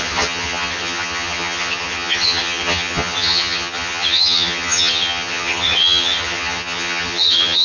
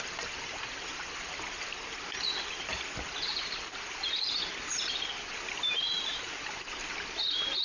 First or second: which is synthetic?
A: first